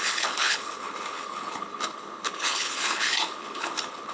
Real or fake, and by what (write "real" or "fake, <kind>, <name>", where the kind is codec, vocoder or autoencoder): fake, codec, HILCodec